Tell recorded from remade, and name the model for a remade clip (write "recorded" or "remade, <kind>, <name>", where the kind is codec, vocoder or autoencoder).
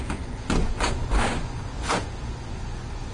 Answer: remade, vocoder, Vocos